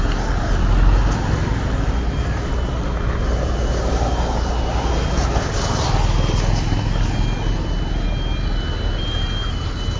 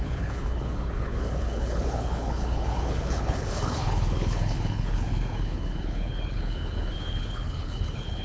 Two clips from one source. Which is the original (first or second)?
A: first